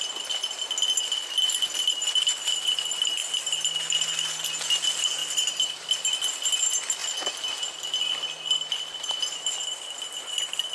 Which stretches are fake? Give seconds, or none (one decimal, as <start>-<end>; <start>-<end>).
5.2-6.5